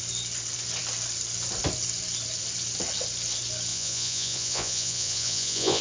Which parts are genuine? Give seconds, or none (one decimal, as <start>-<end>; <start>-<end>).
0.0-3.7